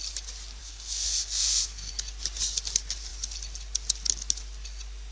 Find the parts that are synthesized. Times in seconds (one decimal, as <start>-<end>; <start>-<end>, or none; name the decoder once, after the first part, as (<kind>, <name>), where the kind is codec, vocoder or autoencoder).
0.6-1.9 (codec, SNAC)